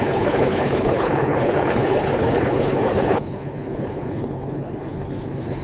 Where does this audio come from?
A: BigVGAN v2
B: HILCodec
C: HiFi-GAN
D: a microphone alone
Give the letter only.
B